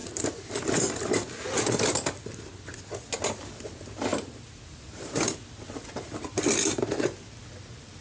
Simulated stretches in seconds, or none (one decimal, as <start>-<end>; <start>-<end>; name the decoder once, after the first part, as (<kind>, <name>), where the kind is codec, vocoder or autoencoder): 4.1-5.4 (vocoder, BigVGAN v2)